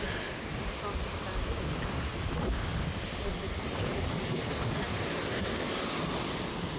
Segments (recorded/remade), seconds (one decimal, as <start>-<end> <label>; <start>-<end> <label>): 0.0-6.8 recorded